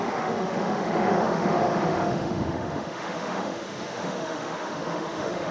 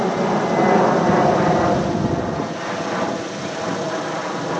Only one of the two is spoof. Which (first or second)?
first